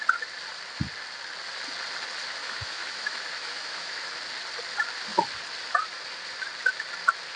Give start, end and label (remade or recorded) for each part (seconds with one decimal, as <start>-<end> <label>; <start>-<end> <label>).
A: 0.0-2.4 recorded; 2.4-4.1 remade; 4.1-7.4 recorded